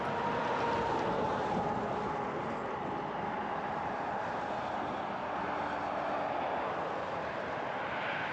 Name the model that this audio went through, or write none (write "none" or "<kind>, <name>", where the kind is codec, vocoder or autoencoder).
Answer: none